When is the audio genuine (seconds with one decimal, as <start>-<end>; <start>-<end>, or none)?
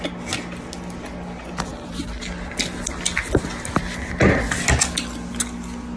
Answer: 0.0-6.0